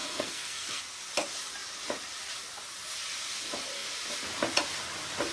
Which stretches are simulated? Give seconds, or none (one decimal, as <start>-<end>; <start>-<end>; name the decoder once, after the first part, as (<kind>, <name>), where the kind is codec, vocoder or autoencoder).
0.0-0.8 (codec, SNAC)